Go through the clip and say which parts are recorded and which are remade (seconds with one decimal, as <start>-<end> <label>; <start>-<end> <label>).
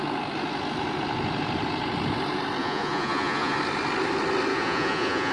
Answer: 0.0-2.6 recorded; 2.6-3.6 remade; 3.6-4.5 recorded; 4.5-5.3 remade